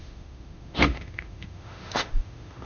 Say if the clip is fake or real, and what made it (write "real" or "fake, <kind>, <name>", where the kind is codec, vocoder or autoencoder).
fake, autoencoder, DAC-VAE